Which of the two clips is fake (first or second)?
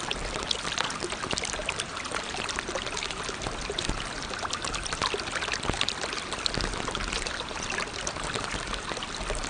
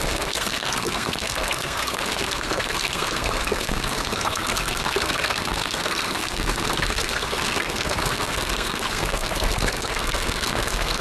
second